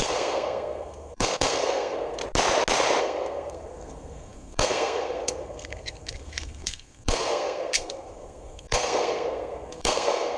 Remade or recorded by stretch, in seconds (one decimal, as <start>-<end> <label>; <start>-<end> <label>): 0.0-2.2 remade; 2.2-3.0 recorded; 3.0-10.4 remade

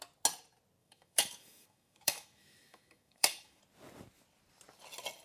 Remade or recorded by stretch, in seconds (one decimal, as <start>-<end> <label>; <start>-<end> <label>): 0.0-0.8 recorded; 0.8-3.6 remade; 3.6-5.2 recorded

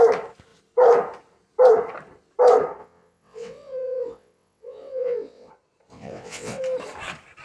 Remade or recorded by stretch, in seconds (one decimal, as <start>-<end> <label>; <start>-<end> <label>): 0.0-2.8 recorded; 2.8-5.5 remade; 5.5-5.9 recorded; 5.9-6.6 remade; 6.6-7.4 recorded

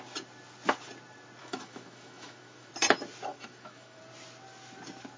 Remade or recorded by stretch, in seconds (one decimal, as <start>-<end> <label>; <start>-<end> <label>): 0.0-1.4 recorded; 1.4-2.7 remade; 2.7-3.3 recorded; 3.3-4.0 remade; 4.0-5.2 recorded

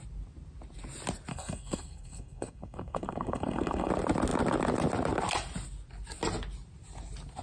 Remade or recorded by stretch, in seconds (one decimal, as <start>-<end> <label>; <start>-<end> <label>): 0.0-1.3 recorded; 1.3-3.9 remade; 3.9-7.4 recorded

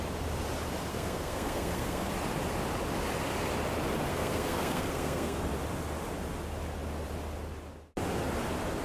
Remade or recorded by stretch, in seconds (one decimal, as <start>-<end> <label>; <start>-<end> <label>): 0.0-0.9 recorded; 0.9-2.1 remade; 2.1-4.1 recorded; 4.1-5.4 remade; 5.4-8.8 recorded

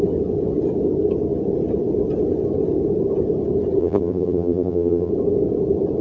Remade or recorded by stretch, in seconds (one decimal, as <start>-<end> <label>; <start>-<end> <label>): 0.0-3.8 recorded; 3.8-5.1 remade; 5.1-6.0 recorded

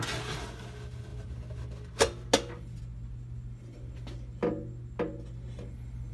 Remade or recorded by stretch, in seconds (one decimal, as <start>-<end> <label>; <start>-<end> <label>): 0.0-6.1 recorded